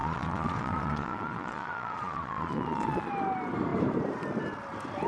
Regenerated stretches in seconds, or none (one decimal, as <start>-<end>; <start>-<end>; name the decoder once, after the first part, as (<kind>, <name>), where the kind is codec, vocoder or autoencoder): 0.0-3.1 (vocoder, Vocos)